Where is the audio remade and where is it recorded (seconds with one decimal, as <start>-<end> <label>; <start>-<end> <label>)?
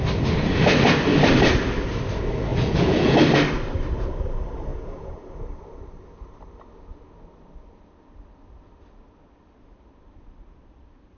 0.0-2.5 recorded; 2.5-3.2 remade; 3.2-4.7 recorded; 4.7-5.3 remade; 5.3-11.2 recorded